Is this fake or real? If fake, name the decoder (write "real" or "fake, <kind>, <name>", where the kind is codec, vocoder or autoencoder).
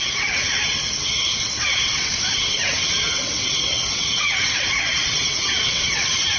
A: fake, vocoder, WaveNeXt